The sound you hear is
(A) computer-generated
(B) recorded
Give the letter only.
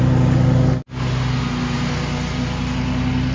B